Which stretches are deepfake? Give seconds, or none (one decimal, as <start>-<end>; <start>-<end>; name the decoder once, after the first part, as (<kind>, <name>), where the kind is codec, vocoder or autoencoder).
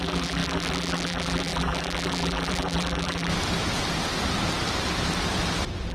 0.0-3.3 (vocoder, BigVGAN v2)